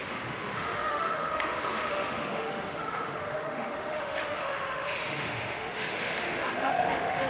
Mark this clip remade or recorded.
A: remade